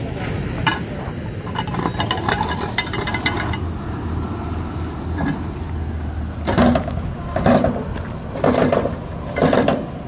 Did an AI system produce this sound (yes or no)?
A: no